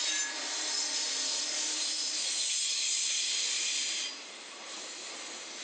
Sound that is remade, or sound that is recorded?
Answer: recorded